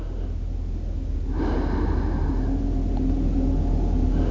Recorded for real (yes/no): yes